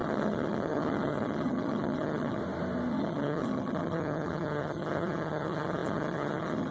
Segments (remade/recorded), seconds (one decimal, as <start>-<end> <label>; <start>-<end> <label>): 0.0-2.4 remade; 2.4-2.9 recorded; 2.9-6.7 remade